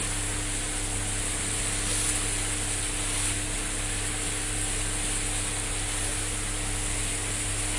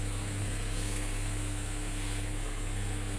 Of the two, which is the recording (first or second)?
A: first